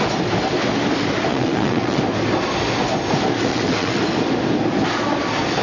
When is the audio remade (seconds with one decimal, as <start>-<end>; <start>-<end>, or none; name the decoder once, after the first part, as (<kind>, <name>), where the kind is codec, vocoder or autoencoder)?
1.3-2.0 (vocoder, WaveNeXt); 3.5-4.0